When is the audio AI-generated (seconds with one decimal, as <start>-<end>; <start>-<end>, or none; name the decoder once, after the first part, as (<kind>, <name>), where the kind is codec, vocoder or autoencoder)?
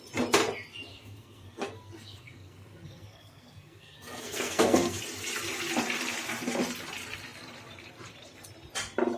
0.9-5.0 (codec, SNAC)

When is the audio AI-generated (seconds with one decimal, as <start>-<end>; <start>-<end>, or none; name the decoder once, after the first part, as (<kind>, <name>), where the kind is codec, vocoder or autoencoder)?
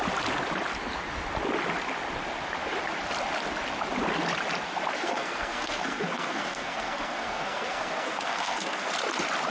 4.9-8.9 (codec, SNAC)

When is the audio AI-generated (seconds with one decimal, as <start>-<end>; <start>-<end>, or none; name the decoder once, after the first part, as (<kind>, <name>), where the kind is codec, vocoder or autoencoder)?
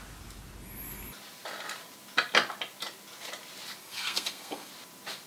3.8-4.7 (codec, SNAC)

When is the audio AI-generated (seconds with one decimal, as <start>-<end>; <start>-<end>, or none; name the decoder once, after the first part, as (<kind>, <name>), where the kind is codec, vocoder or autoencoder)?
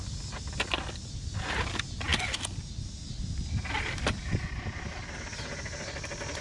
none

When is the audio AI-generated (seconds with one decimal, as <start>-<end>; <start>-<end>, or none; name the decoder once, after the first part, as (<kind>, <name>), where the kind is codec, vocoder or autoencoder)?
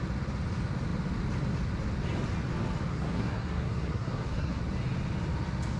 2.9-4.6 (codec, SNAC)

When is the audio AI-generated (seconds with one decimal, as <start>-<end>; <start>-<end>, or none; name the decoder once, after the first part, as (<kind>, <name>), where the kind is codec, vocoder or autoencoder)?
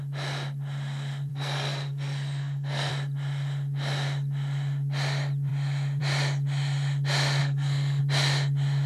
1.3-2.9 (codec, SNAC); 7.4-8.0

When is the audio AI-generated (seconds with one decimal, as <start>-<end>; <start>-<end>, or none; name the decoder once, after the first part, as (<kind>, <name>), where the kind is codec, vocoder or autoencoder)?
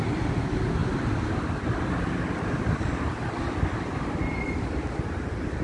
none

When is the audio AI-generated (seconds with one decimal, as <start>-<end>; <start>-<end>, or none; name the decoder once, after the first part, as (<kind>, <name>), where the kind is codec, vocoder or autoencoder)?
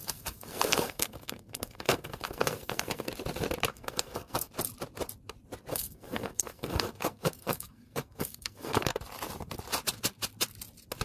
0.0-3.1 (codec, SNAC); 3.7-4.5; 5.7-9.0